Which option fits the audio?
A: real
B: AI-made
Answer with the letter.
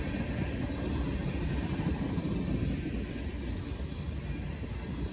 A